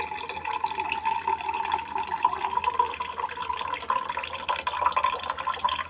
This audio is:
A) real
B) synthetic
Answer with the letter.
A